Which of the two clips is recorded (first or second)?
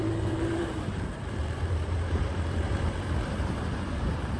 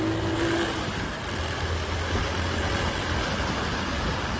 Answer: second